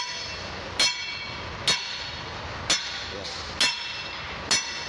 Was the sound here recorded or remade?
recorded